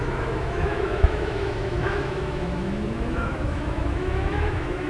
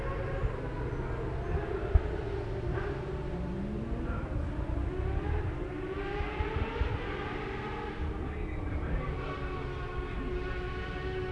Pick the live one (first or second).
second